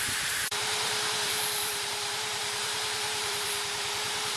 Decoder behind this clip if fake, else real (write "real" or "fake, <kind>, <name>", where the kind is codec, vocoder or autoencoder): fake, vocoder, BigVGAN v2